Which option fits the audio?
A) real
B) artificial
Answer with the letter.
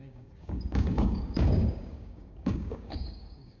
B